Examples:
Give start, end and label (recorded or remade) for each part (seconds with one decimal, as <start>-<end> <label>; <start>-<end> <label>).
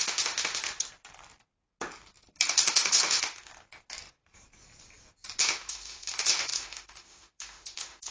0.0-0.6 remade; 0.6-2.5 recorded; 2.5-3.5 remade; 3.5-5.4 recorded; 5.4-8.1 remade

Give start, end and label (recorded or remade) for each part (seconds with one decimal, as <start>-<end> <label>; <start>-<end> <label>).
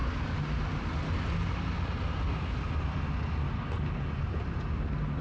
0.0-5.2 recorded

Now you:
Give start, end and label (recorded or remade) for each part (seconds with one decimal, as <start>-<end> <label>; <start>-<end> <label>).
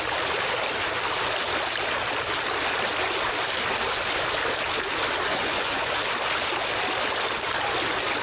0.0-5.3 recorded; 5.3-5.9 remade; 5.9-8.2 recorded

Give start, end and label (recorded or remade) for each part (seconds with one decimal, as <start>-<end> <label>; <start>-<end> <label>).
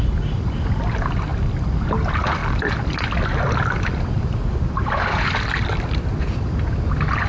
0.0-1.3 recorded; 1.3-1.9 remade; 1.9-7.3 recorded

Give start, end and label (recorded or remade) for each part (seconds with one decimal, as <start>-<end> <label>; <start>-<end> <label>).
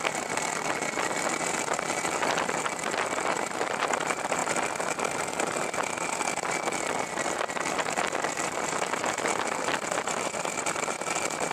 0.0-4.4 remade; 4.4-8.6 recorded; 8.6-11.5 remade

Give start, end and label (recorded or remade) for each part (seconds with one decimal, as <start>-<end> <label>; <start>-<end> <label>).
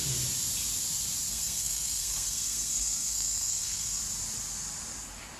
0.0-1.3 recorded; 1.3-4.0 remade; 4.0-5.4 recorded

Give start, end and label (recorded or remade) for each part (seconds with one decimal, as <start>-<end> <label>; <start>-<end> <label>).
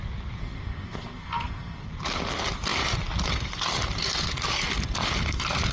0.0-0.4 recorded; 0.4-1.9 remade; 1.9-5.7 recorded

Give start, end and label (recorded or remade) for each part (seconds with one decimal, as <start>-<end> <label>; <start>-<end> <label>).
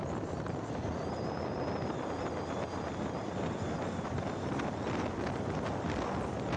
0.0-4.0 recorded; 4.0-6.6 remade